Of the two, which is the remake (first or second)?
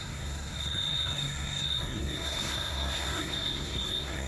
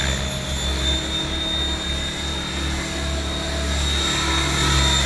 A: first